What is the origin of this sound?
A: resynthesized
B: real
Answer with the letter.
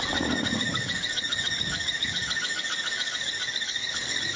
A